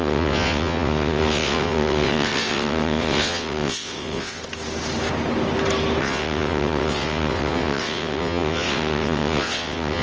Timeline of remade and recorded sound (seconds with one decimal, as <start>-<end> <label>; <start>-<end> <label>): 0.0-4.4 remade; 4.4-6.0 recorded; 6.0-10.0 remade